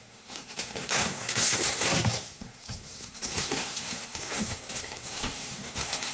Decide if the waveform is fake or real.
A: fake